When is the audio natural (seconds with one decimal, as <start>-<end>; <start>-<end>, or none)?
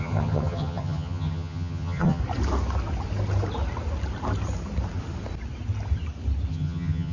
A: 2.2-6.5